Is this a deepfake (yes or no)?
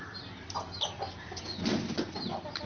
no